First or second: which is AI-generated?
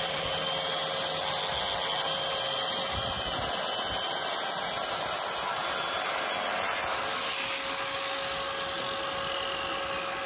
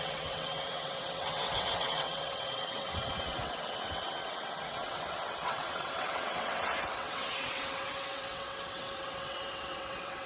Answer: second